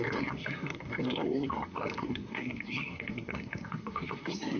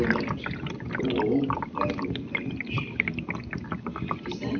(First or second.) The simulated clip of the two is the first